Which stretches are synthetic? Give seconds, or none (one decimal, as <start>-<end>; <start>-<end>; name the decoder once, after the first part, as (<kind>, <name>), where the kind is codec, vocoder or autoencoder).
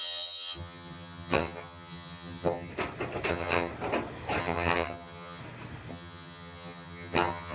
0.0-2.7 (vocoder, HiFi-GAN); 3.3-3.7; 4.4-5.4; 5.9-7.5